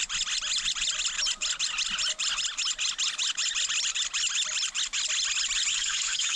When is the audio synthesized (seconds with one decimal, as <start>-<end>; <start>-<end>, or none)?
5.7-6.4